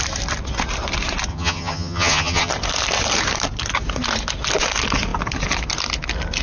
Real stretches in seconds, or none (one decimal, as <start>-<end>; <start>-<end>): 0.0-1.3; 2.5-6.4